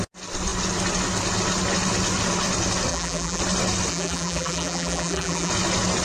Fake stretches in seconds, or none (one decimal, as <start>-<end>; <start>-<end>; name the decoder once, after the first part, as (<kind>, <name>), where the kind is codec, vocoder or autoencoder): 2.9-3.4 (vocoder, BigVGAN v2); 3.9-5.5